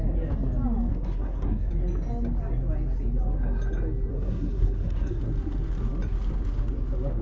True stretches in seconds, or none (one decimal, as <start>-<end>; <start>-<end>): 0.0-0.9; 1.7-4.1; 5.2-7.2